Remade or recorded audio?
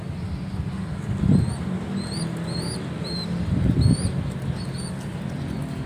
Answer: recorded